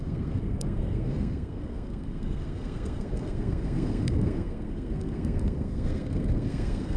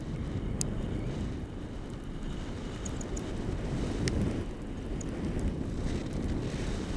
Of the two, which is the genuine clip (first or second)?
second